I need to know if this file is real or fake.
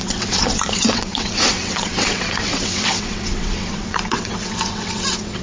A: fake